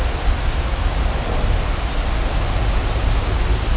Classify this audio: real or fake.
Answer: real